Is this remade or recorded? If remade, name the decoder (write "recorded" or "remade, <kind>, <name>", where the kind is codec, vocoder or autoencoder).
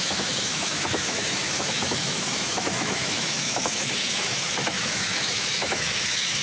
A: remade, autoencoder, DAC-VAE